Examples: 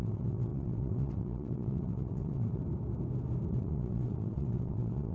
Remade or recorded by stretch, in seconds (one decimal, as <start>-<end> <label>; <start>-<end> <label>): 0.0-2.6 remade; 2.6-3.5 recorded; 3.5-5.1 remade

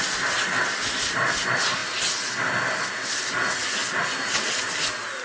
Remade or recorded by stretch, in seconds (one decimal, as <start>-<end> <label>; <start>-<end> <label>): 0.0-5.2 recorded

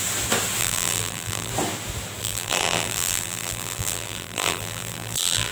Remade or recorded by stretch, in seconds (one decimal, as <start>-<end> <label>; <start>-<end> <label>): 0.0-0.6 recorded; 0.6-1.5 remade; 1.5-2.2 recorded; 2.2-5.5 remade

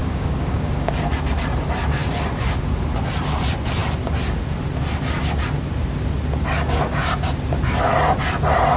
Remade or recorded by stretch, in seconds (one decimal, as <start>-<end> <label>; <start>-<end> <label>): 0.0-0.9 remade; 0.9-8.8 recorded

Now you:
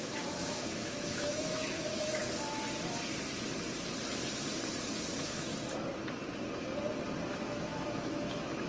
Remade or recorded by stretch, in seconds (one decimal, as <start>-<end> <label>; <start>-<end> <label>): 0.0-2.2 remade; 2.2-5.1 recorded; 5.1-5.5 remade; 5.5-7.3 recorded; 7.3-8.7 remade